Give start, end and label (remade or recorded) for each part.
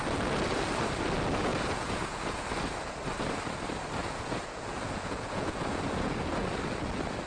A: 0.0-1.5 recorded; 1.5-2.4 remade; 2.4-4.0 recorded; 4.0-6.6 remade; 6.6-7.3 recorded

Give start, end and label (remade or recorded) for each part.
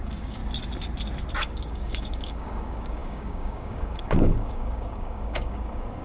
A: 0.0-0.4 remade; 0.4-1.4 recorded; 1.4-6.0 remade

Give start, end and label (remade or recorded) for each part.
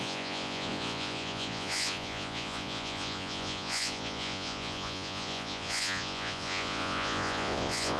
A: 0.0-8.0 remade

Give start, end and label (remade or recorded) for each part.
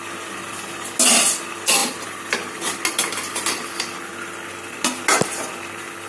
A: 0.0-6.1 recorded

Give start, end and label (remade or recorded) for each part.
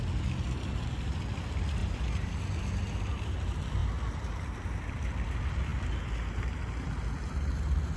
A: 0.0-1.8 recorded; 1.8-2.4 remade; 2.4-8.0 recorded